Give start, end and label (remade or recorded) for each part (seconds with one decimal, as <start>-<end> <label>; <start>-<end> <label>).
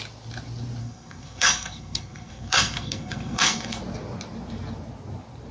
0.0-0.8 recorded; 0.8-3.8 remade; 3.8-5.5 recorded